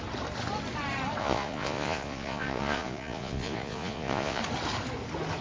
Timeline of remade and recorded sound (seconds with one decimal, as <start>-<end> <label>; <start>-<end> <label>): 0.0-1.2 recorded; 1.2-4.4 remade; 4.4-5.4 recorded